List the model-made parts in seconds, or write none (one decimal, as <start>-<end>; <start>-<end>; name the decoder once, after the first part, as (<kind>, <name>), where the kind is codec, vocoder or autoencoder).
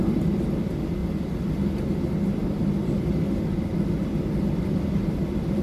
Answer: none